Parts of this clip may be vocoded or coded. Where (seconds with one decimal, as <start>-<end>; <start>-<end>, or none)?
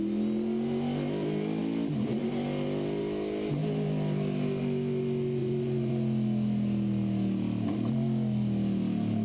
5.4-5.9